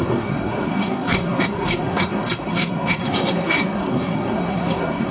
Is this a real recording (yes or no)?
no